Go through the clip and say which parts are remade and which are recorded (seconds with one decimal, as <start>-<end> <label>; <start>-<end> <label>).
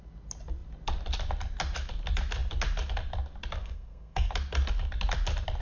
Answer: 0.0-3.6 recorded; 3.6-4.3 remade; 4.3-5.6 recorded